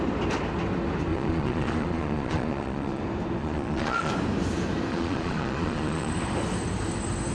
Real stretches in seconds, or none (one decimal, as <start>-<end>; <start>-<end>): 0.0-1.1; 3.0-3.4; 4.1-4.9; 6.1-7.3